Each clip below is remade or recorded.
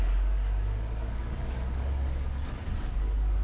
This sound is remade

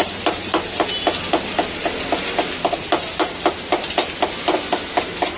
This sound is recorded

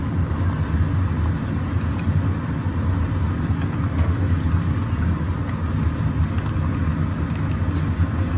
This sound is recorded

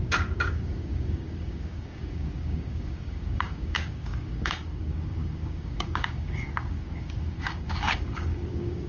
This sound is remade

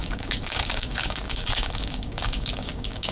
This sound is remade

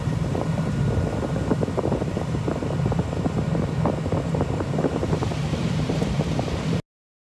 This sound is recorded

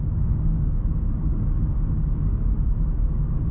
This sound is remade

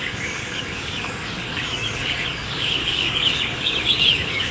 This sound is remade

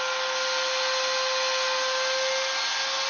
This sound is recorded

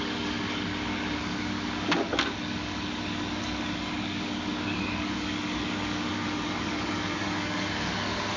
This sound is remade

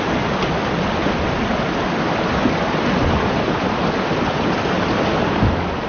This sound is recorded